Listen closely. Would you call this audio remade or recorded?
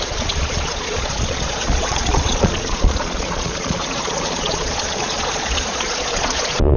remade